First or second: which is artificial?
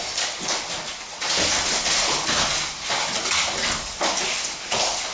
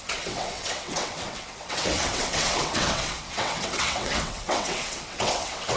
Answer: second